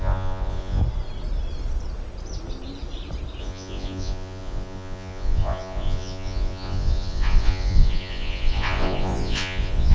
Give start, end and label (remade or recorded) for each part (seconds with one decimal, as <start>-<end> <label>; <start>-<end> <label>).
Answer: 0.0-0.8 remade; 0.8-3.4 recorded; 3.4-9.9 remade